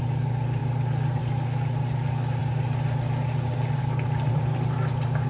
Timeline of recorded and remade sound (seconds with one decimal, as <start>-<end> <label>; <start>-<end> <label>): 0.0-5.3 recorded